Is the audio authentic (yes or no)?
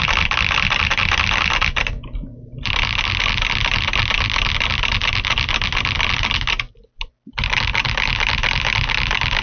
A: yes